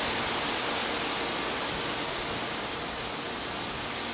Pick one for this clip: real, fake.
real